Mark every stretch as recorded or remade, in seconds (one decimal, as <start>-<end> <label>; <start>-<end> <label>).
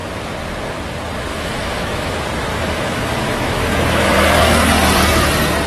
0.0-1.3 recorded; 1.3-2.1 remade; 2.1-2.5 recorded; 2.5-4.7 remade; 4.7-5.7 recorded